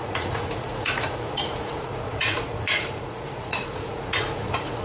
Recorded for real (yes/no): no